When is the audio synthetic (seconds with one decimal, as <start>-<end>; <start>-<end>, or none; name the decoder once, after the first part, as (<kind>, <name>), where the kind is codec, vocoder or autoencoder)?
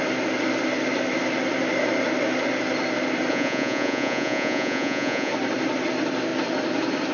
3.3-5.3 (vocoder, Vocos)